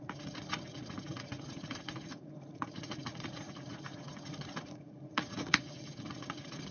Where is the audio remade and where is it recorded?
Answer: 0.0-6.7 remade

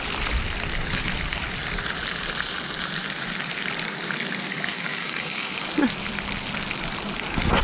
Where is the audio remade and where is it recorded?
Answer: 0.0-4.5 recorded; 4.5-5.7 remade; 5.7-7.6 recorded

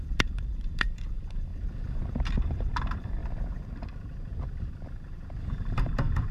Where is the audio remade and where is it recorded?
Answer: 0.0-1.5 remade; 1.5-2.3 recorded; 2.3-3.2 remade; 3.2-5.5 recorded; 5.5-6.3 remade

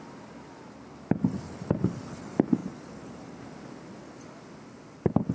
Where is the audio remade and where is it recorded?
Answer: 0.0-5.3 recorded

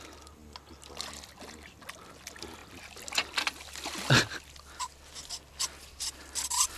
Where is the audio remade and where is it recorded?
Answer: 0.0-6.8 recorded

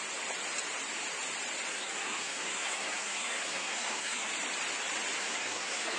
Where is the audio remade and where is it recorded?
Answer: 0.0-1.7 recorded; 1.7-4.3 remade; 4.3-5.2 recorded; 5.2-6.0 remade